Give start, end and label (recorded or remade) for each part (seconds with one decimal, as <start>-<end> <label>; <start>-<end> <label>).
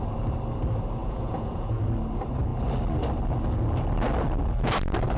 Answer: 0.0-1.0 recorded; 1.0-1.8 remade; 1.8-5.2 recorded